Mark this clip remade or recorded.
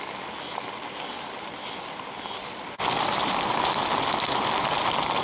recorded